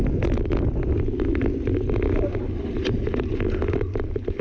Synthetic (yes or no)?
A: no